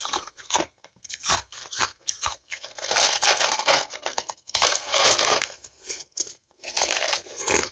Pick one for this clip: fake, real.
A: fake